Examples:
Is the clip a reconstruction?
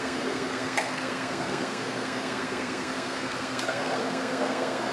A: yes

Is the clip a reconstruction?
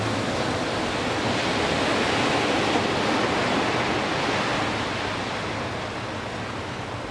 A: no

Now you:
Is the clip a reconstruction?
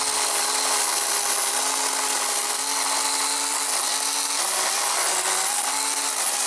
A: no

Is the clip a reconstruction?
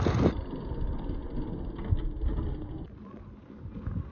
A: no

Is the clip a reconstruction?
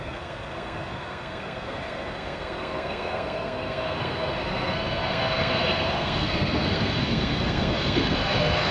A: yes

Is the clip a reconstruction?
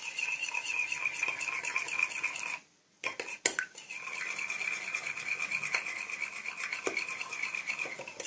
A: no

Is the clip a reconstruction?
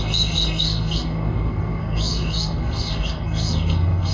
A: yes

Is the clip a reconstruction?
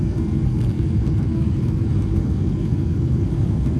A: yes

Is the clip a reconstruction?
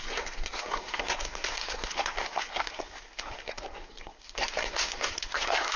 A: yes